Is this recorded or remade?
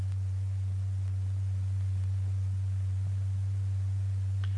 recorded